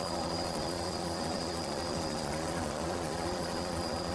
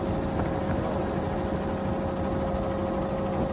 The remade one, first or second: first